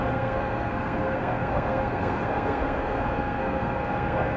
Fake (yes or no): yes